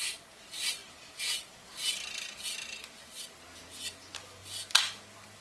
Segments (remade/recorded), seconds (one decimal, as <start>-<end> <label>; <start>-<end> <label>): 0.0-5.4 recorded